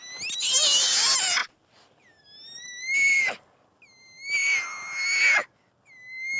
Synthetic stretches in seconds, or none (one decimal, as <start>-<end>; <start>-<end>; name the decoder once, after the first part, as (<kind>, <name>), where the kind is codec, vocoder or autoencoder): none